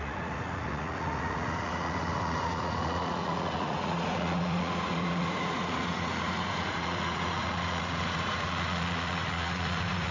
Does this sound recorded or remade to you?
remade